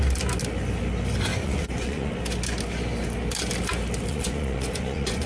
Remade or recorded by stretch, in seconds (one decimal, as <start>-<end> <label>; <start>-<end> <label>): 0.0-1.3 recorded; 1.3-2.1 remade; 2.1-4.1 recorded; 4.1-5.3 remade